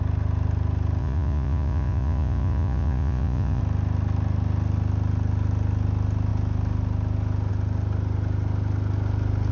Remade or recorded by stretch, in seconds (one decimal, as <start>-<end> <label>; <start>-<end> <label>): 0.0-1.0 recorded; 1.0-3.6 remade; 3.6-9.5 recorded